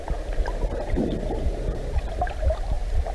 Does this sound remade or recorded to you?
recorded